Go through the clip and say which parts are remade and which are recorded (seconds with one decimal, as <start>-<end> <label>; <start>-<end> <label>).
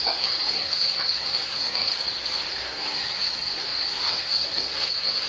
0.0-1.9 remade; 1.9-2.5 recorded; 2.5-5.3 remade